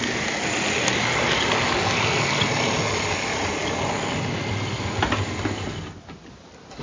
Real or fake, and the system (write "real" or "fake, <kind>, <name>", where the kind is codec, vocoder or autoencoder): real